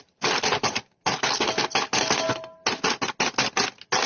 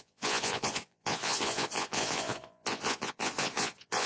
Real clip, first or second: first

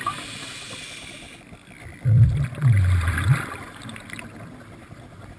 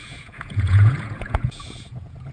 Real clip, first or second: first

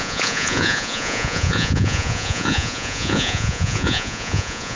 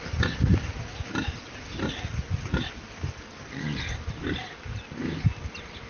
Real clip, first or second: second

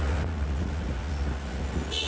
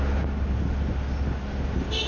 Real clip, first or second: second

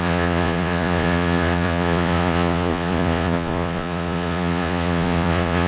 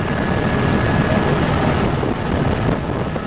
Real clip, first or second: second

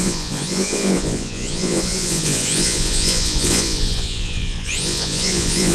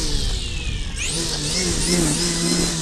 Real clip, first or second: second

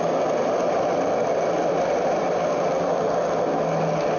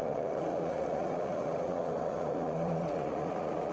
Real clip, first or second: first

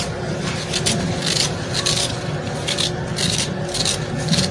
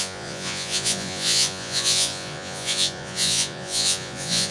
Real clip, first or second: first